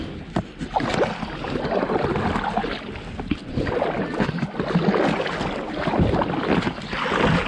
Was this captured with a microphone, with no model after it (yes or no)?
yes